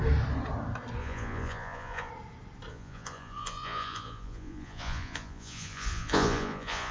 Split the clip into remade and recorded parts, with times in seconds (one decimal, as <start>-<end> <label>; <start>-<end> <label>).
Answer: 0.0-1.0 recorded; 1.0-2.1 remade; 2.1-2.7 recorded; 2.7-6.9 remade